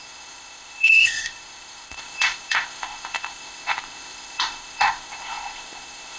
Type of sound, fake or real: fake